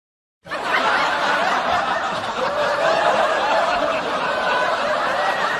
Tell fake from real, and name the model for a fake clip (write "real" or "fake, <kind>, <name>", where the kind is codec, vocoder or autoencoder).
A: fake, vocoder, BigVGAN v2